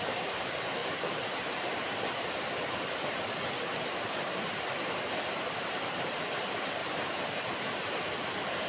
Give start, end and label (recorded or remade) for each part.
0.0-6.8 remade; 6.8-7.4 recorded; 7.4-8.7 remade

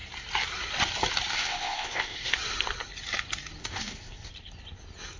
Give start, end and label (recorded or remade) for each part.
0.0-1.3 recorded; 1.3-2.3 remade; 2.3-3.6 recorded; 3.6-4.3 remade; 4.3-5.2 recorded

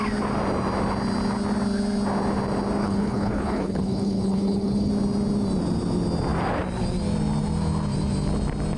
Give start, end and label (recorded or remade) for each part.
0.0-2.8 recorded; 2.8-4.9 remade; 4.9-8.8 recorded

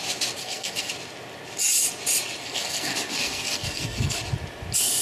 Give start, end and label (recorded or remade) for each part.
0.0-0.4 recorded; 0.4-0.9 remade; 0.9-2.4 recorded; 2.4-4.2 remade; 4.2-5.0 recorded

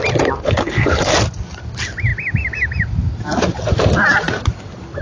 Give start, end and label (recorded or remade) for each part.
0.0-0.4 recorded; 0.4-1.1 remade; 1.1-5.0 recorded

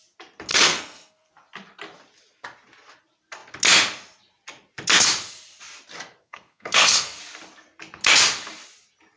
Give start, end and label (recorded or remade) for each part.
0.0-0.5 recorded; 0.5-1.3 remade; 1.3-6.2 recorded; 6.2-7.2 remade; 7.2-9.2 recorded

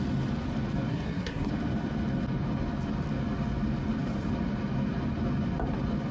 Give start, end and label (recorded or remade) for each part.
0.0-0.9 recorded; 0.9-1.5 remade; 1.5-6.1 recorded

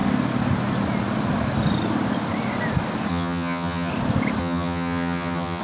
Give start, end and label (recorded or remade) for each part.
0.0-3.1 recorded; 3.1-3.9 remade; 3.9-4.4 recorded; 4.4-5.6 remade